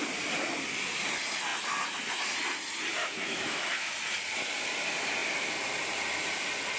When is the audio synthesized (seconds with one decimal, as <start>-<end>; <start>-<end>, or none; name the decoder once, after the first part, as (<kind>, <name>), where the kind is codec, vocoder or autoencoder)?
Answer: 3.0-3.9 (autoencoder, DAC-VAE)